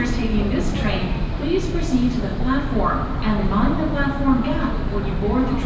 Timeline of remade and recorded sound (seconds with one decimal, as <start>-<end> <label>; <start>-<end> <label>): 0.0-5.7 recorded